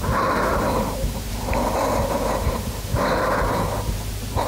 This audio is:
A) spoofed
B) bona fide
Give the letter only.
B